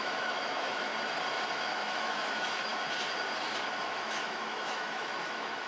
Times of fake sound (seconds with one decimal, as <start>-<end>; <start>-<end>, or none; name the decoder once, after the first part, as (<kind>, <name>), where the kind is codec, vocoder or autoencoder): 0.0-0.9 (autoencoder, DAC-VAE); 1.5-2.7; 3.8-5.7

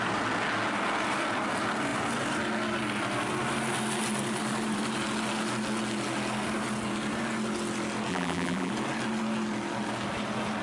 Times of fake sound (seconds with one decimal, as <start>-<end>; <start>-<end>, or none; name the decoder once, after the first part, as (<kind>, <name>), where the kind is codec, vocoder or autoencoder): 8.1-8.7 (vocoder, BigVGAN v2)